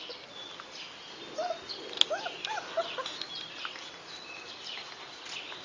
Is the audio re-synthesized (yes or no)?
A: no